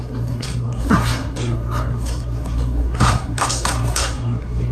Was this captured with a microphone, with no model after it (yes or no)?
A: no